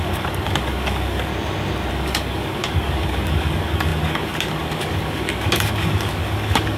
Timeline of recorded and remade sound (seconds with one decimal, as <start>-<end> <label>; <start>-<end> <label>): 0.0-1.3 remade; 1.3-1.9 recorded; 1.9-6.8 remade